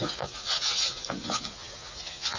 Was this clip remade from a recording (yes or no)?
yes